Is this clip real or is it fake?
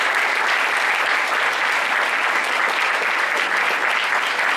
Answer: real